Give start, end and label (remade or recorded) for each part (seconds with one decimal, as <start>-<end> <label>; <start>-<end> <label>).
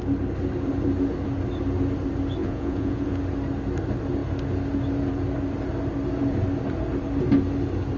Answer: 0.0-2.4 recorded; 2.4-3.2 remade; 3.2-8.0 recorded